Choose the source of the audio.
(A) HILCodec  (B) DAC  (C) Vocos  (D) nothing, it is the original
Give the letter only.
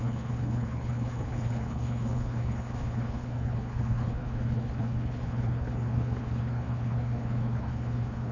A